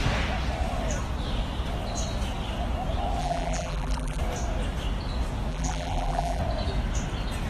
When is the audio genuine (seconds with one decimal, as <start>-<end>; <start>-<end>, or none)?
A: 0.0-3.2; 4.2-5.5; 6.4-7.5